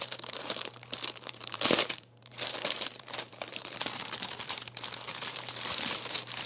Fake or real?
fake